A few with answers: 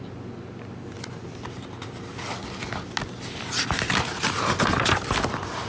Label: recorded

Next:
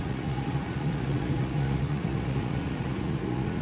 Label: remade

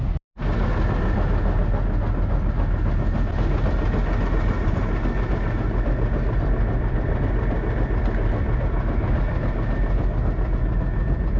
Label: recorded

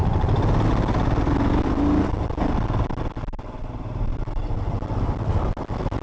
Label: recorded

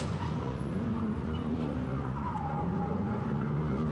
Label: remade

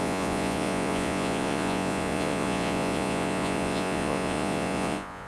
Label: remade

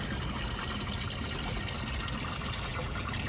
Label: recorded